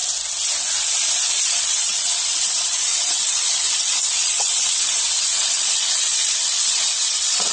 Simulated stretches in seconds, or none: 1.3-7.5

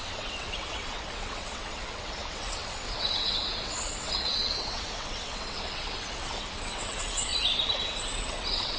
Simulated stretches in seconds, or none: 0.0-7.3; 7.8-8.8

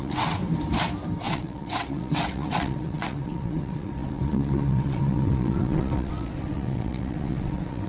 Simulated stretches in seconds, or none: 0.0-0.4; 1.2-7.9

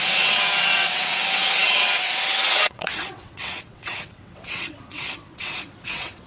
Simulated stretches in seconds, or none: 0.0-6.3